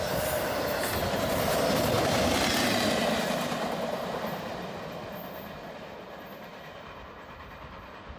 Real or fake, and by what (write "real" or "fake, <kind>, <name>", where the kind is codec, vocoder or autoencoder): real